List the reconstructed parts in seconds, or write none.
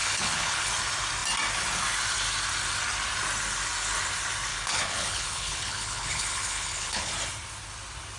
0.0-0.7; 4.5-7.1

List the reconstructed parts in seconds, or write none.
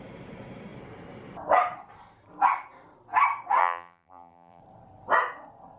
3.6-4.6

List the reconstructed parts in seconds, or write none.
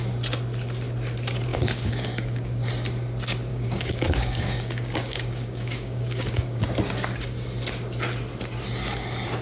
1.5-2.7; 3.5-6.6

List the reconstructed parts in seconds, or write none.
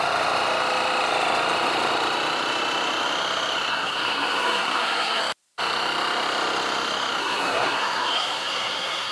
3.7-5.2; 7.2-9.1